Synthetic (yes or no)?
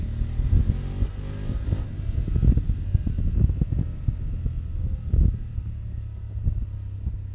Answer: no